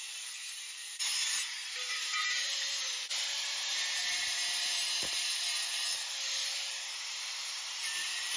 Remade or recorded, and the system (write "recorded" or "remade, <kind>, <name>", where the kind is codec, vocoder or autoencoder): remade, vocoder, BigVGAN v2